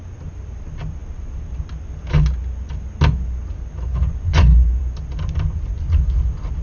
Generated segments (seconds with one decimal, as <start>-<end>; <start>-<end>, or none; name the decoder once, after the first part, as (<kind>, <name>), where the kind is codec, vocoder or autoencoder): 3.9-4.8 (vocoder, Vocos)